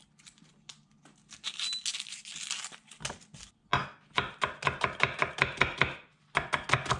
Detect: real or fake real